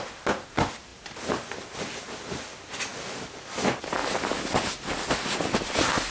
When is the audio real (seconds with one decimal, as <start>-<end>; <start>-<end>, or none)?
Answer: 2.9-3.6; 4.0-6.1